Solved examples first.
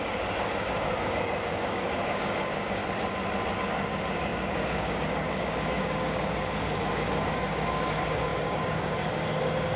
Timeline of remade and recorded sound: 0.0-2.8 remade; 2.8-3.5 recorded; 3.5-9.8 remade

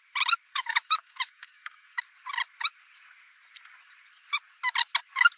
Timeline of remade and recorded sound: 0.0-0.5 recorded; 0.5-2.0 remade; 2.0-5.4 recorded